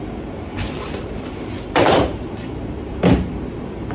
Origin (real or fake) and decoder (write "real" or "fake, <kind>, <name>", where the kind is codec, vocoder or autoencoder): fake, vocoder, BigVGAN v2